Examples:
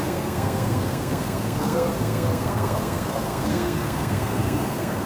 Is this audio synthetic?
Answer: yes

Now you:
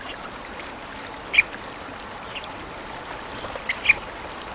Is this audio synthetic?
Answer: yes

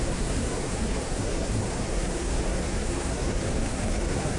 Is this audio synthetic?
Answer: yes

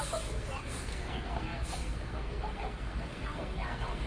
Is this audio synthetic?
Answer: yes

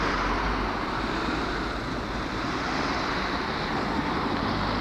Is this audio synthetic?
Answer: yes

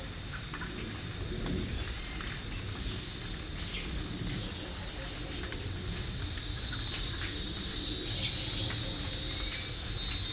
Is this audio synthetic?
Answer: no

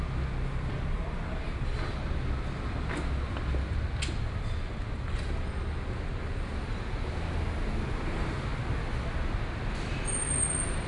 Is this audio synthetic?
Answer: no